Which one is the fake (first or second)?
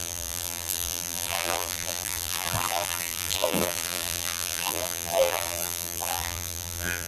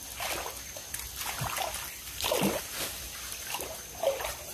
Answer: first